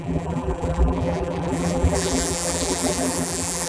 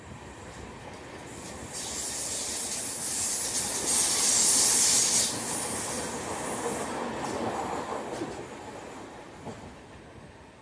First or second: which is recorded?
second